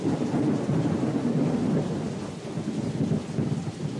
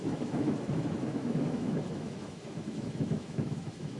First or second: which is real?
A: first